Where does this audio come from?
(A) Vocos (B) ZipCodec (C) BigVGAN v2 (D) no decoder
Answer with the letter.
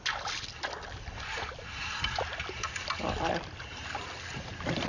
D